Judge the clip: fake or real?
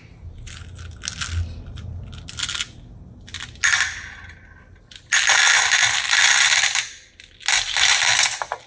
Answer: real